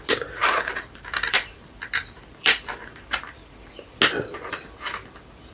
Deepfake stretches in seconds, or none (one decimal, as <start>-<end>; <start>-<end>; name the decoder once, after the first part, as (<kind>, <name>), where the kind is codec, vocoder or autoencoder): 0.4-3.7 (vocoder, BigVGAN v2)